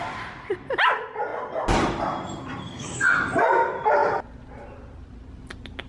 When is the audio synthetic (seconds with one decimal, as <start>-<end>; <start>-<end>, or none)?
2.6-3.2